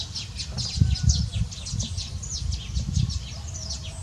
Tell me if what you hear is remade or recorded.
recorded